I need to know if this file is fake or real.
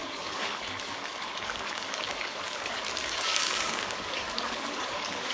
fake